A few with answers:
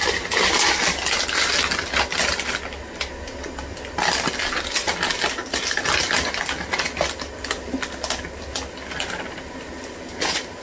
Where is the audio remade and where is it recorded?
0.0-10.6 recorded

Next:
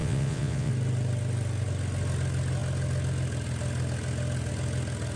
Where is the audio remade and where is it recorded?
0.0-0.7 remade; 0.7-5.2 recorded

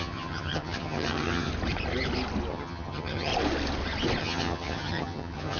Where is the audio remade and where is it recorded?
0.0-1.5 remade; 1.5-2.5 recorded; 2.5-3.3 remade; 3.3-4.2 recorded; 4.2-5.6 remade

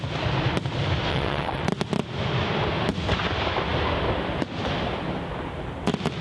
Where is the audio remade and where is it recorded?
0.0-1.1 recorded; 1.1-1.6 remade; 1.6-6.2 recorded

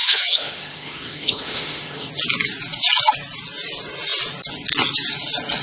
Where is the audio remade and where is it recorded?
0.0-2.1 remade; 2.1-5.6 recorded

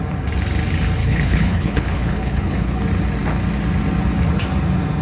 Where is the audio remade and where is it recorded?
0.0-1.0 recorded; 1.0-2.8 remade; 2.8-5.0 recorded